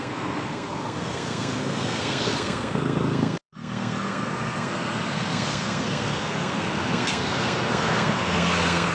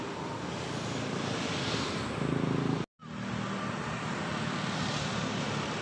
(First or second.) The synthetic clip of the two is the first